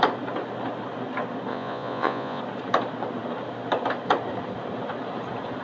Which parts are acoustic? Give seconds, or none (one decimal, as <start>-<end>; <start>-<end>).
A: 0.0-1.5; 2.4-5.6

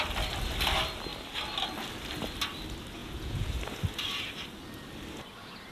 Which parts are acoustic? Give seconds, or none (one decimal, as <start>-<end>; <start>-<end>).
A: 0.0-3.0; 3.6-5.7

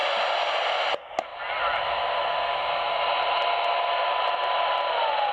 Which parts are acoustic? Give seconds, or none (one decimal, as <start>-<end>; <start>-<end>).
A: 0.0-5.3

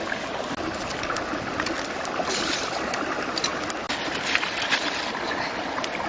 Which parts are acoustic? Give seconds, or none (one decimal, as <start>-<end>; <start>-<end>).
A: 0.0-6.1

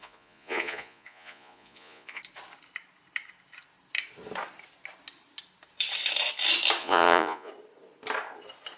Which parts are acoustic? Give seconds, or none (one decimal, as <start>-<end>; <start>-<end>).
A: 2.2-6.8; 7.5-8.8

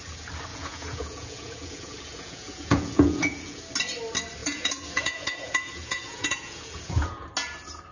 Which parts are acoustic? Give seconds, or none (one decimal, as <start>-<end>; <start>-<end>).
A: 0.0-0.5; 3.6-4.4; 7.3-7.9

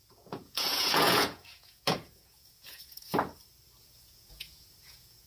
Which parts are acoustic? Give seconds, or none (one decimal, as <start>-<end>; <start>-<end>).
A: 3.1-3.8